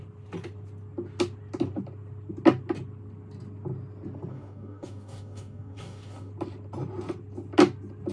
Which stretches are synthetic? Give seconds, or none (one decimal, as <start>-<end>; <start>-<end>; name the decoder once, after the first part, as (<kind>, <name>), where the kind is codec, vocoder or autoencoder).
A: 4.3-6.3 (codec, DAC)